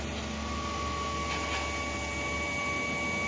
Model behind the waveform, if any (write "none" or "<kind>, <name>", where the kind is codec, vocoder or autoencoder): none